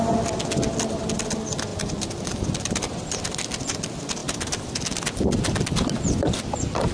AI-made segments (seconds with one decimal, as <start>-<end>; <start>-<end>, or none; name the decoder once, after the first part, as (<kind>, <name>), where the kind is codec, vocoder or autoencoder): 1.7-2.8 (vocoder, BigVGAN v2); 4.2-4.7